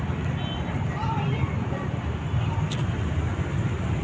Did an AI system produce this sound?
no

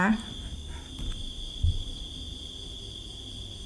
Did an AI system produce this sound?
no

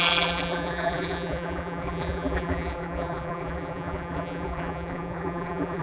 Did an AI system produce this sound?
yes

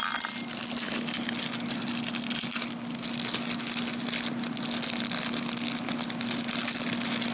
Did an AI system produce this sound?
no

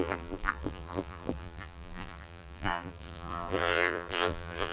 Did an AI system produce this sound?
yes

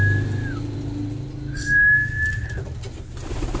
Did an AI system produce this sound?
no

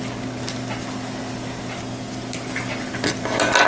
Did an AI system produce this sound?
no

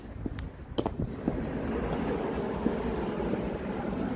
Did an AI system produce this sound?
no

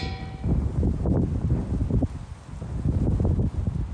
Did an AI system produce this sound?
no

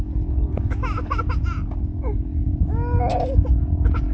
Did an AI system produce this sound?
no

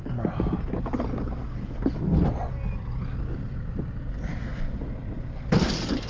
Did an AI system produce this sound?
no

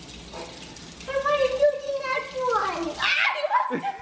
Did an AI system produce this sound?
no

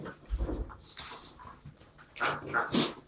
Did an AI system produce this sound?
yes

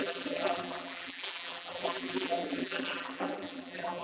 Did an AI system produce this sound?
yes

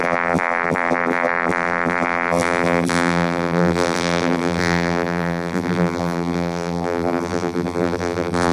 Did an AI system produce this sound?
yes